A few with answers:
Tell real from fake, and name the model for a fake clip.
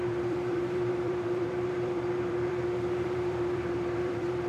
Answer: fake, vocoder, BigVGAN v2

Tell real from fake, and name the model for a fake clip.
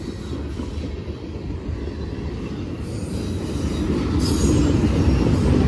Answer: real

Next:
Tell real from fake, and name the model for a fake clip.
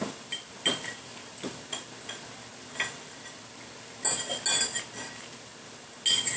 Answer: real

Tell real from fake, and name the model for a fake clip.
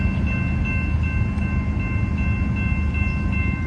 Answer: real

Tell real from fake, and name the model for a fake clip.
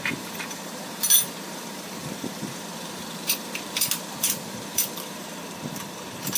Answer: fake, vocoder, BigVGAN v2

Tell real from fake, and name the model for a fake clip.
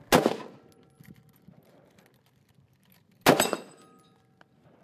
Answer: real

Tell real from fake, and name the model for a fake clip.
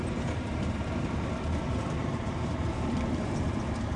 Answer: fake, vocoder, BigVGAN v2